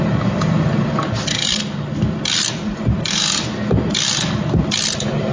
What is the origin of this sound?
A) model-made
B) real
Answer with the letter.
B